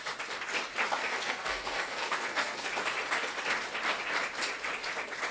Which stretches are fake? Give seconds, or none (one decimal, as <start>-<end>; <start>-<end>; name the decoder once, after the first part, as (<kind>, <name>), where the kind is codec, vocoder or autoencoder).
1.0-2.7 (codec, SNAC)